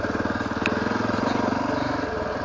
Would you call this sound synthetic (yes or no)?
no